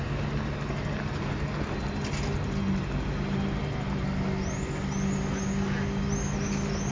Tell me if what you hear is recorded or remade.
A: recorded